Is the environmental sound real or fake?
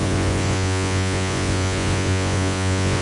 fake